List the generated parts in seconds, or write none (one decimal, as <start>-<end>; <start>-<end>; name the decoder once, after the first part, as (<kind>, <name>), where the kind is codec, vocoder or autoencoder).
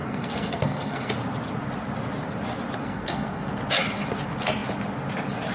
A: 0.0-1.1 (codec, SNAC); 2.8-3.5